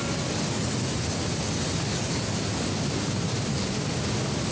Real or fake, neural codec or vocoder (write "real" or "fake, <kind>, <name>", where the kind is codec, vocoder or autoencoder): real